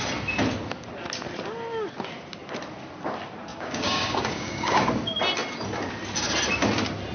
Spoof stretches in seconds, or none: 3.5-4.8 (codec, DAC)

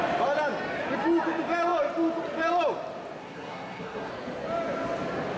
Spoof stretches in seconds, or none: 3.2-4.1 (codec, SNAC)

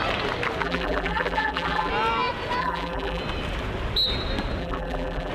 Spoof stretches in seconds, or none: 0.6-1.9 (vocoder, BigVGAN v2); 2.6-3.2; 4.6-5.3